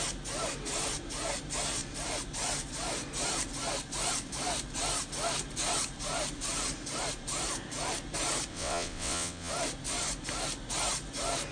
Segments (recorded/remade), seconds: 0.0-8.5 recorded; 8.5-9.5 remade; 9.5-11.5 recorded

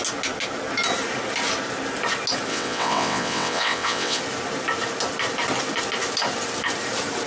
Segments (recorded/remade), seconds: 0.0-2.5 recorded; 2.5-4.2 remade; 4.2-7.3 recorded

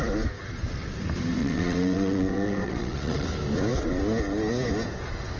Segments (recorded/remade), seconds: 0.0-1.4 recorded; 1.4-3.3 remade; 3.3-5.4 recorded

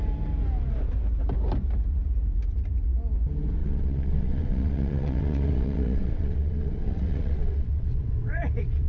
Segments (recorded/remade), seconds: 0.0-3.6 recorded; 3.6-8.9 remade